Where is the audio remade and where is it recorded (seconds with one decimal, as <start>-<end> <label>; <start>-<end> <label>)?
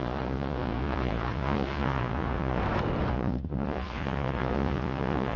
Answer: 0.0-2.6 remade; 2.6-3.1 recorded; 3.1-5.4 remade